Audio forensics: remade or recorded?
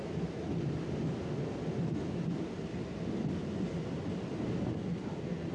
recorded